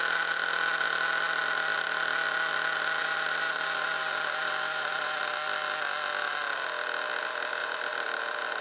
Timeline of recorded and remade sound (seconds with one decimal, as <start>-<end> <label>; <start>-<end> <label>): 0.0-3.0 recorded; 3.0-5.2 remade; 5.2-7.6 recorded; 7.6-8.2 remade; 8.2-8.6 recorded